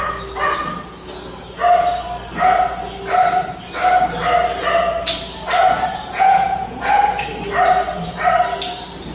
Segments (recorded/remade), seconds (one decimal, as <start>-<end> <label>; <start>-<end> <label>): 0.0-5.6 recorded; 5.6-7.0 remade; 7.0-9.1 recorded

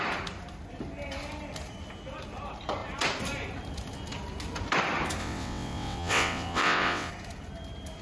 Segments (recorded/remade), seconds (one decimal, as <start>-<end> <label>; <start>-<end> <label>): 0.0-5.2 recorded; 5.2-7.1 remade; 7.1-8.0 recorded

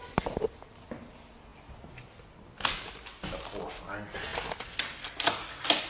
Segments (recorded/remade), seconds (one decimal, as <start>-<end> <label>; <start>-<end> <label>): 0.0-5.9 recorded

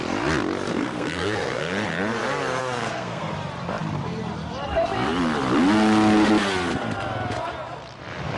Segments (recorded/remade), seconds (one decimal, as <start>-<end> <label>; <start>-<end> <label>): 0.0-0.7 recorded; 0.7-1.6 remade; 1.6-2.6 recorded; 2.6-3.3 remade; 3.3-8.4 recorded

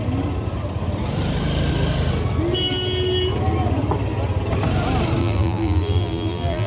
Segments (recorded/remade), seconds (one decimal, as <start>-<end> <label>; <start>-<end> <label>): 0.0-5.2 recorded; 5.2-6.7 remade

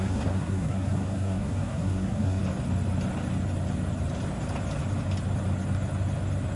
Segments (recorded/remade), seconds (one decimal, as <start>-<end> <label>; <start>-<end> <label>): 0.0-2.4 remade; 2.4-6.6 recorded

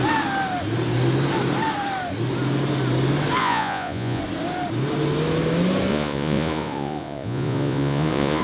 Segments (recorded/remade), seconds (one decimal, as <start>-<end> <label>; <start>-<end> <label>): 0.0-3.4 recorded; 3.4-4.2 remade; 4.2-5.9 recorded; 5.9-8.4 remade